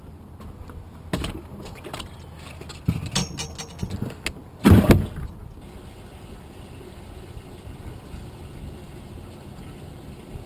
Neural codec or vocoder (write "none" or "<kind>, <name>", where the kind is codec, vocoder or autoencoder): none